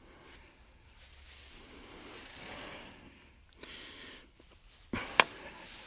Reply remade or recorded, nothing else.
recorded